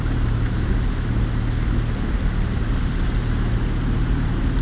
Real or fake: real